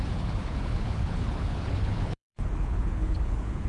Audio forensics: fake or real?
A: fake